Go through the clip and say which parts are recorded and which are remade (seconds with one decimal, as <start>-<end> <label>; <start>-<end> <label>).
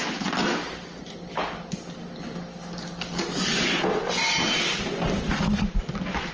0.0-6.3 recorded